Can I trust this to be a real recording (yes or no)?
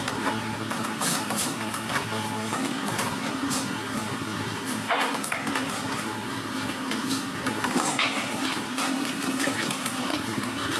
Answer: no